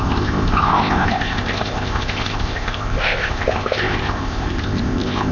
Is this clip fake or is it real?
fake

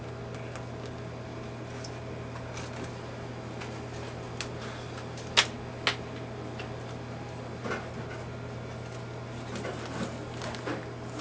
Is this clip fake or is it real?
real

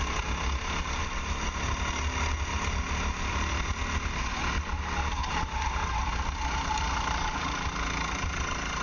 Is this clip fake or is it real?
real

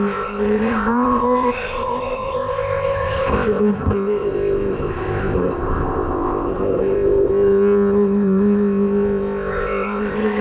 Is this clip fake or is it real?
fake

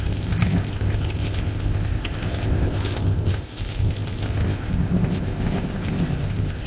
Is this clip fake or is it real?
fake